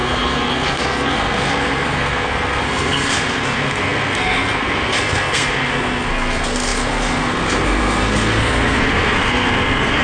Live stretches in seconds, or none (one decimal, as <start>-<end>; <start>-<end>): none